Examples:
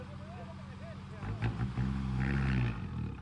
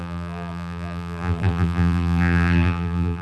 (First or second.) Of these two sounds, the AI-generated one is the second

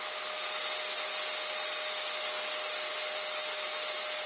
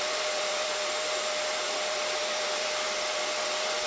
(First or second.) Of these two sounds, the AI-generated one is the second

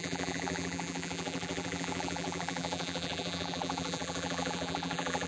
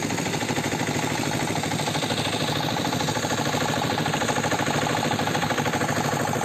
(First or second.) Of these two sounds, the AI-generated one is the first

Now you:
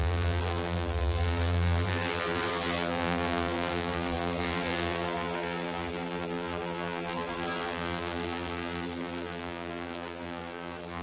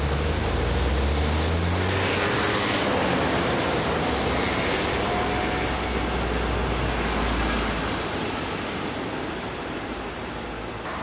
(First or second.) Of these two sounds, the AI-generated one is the first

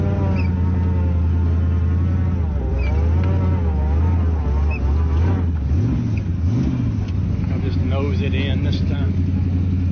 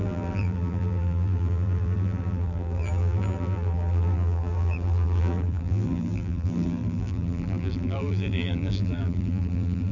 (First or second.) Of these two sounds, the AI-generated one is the second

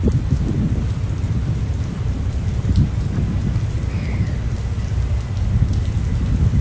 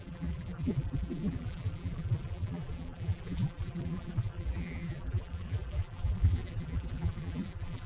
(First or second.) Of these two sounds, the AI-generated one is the second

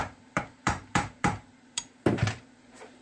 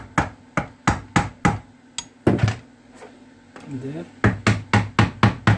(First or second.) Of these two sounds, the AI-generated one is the first